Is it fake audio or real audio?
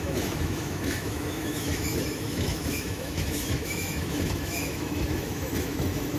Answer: fake